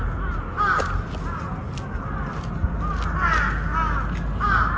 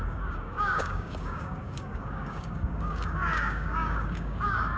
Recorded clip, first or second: first